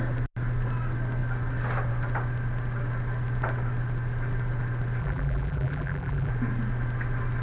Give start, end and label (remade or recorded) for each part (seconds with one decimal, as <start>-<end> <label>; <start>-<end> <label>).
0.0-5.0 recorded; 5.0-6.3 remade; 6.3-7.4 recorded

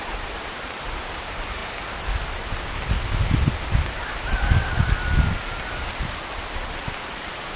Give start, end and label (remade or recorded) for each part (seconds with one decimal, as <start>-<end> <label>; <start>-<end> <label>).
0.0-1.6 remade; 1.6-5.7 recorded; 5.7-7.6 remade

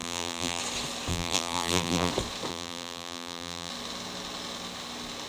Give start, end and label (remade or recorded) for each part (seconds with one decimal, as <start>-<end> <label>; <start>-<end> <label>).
0.0-0.6 remade; 0.6-1.1 recorded; 1.1-2.1 remade; 2.1-2.5 recorded; 2.5-3.7 remade; 3.7-5.3 recorded